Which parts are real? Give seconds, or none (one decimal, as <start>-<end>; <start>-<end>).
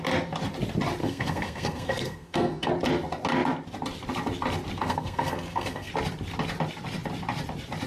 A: 0.0-1.0; 2.7-4.8; 5.9-7.9